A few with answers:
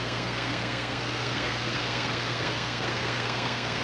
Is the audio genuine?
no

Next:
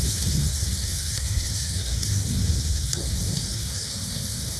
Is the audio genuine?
no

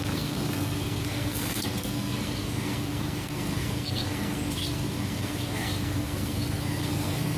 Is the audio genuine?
no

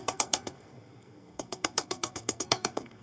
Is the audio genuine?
no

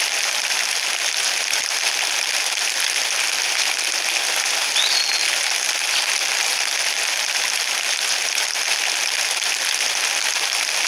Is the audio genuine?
yes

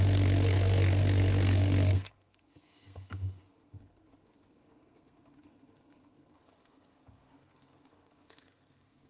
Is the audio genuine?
no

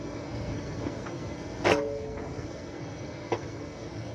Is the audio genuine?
no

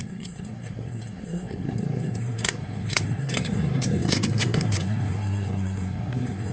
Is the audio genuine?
no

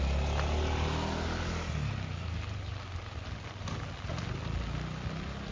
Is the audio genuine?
yes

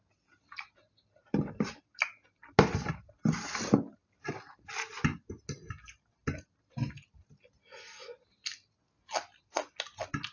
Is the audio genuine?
yes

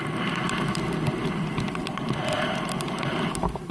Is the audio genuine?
yes